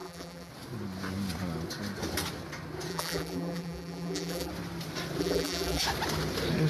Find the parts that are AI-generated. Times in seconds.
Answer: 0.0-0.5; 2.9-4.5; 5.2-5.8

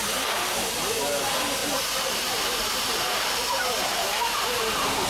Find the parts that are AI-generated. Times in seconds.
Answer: 1.6-5.1

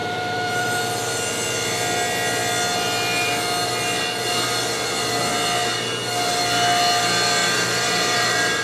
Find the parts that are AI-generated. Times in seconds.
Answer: 0.0-0.8; 7.4-8.6

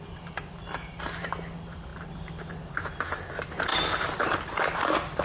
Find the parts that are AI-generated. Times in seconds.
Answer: none

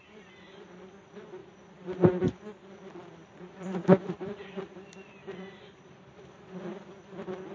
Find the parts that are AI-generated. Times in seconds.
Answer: 1.4-2.4; 3.2-6.5

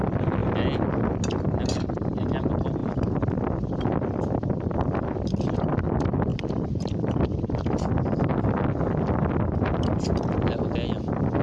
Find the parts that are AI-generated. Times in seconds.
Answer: 2.8-3.8; 6.3-8.2

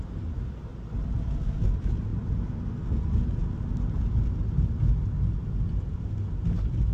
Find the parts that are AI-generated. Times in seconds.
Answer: 0.7-1.5; 2.1-2.7

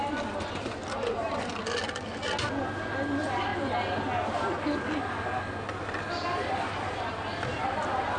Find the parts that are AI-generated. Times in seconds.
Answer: none